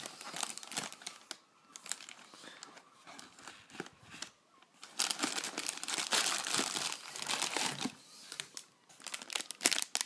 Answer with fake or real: real